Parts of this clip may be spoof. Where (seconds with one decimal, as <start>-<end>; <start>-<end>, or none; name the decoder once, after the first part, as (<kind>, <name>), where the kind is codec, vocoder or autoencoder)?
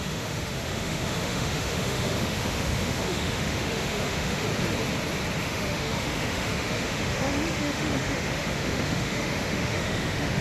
0.0-4.5 (autoencoder, DAC-VAE); 5.4-10.4